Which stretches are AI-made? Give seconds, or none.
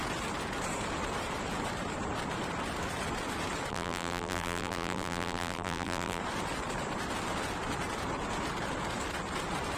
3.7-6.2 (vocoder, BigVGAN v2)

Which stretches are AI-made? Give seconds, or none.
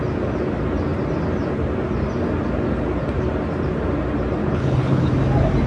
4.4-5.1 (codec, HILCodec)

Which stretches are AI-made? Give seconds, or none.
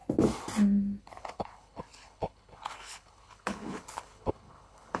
1.0-5.0 (codec, HILCodec)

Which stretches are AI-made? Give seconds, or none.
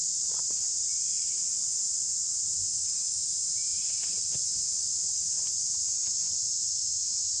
none